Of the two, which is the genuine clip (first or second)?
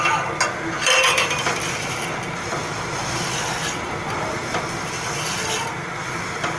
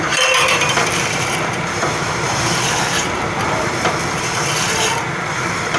first